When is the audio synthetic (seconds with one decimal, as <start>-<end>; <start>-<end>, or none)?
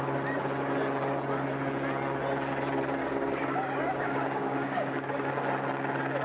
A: 3.0-5.3